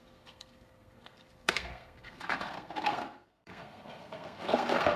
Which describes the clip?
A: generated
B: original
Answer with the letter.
A